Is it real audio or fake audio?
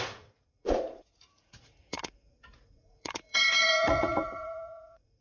fake